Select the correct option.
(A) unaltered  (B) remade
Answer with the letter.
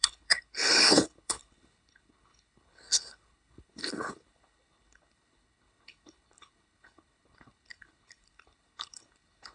B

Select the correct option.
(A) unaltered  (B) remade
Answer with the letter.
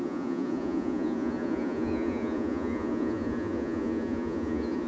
B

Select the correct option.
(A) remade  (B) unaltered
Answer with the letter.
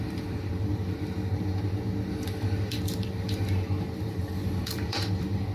A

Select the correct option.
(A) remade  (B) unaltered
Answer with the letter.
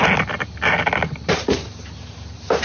B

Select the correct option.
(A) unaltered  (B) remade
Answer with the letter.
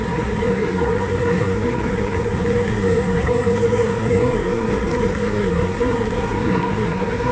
B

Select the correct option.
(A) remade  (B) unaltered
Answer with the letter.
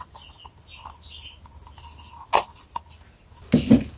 B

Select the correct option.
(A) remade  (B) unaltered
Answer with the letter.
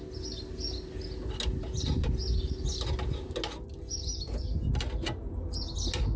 B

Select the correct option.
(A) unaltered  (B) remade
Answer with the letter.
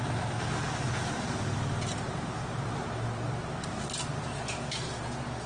A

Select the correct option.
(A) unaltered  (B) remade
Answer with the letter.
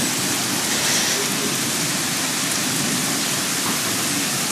A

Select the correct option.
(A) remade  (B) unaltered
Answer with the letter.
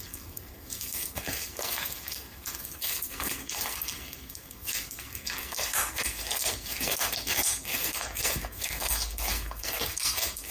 A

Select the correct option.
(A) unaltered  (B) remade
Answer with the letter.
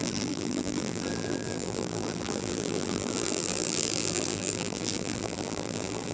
B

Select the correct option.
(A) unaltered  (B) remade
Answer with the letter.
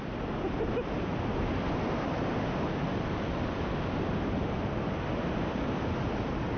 A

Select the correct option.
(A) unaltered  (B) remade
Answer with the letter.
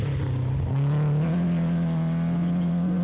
A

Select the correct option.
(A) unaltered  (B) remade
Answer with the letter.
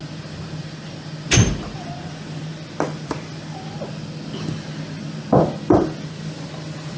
A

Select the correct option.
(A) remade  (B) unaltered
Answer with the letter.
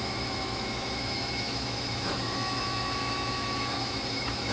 A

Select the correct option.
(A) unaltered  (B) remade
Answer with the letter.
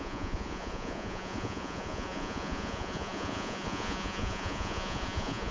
B